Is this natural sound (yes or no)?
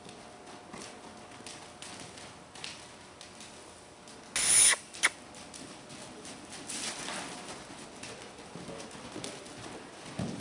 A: yes